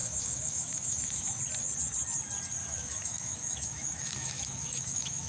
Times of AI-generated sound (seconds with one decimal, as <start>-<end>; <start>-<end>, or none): 0.0-1.4; 2.6-5.3